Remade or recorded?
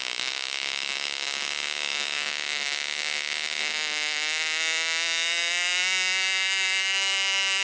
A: remade